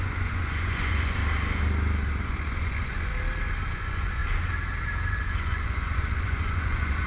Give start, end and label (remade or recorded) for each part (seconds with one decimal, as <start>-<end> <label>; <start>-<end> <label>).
0.0-1.2 remade; 1.2-2.2 recorded; 2.2-3.1 remade; 3.1-3.7 recorded; 3.7-4.2 remade; 4.2-5.1 recorded; 5.1-7.1 remade